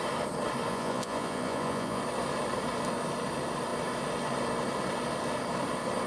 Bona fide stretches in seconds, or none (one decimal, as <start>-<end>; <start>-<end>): 0.0-0.7; 2.0-6.1